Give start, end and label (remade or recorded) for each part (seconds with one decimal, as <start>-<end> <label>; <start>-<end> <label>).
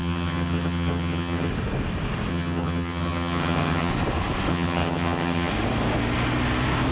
0.0-1.5 remade; 1.5-2.3 recorded; 2.3-3.9 remade; 3.9-4.5 recorded; 4.5-5.5 remade; 5.5-6.9 recorded